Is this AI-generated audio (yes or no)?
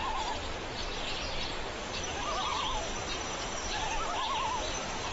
no